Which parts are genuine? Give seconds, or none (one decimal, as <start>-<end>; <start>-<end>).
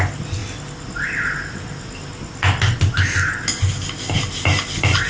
0.0-5.1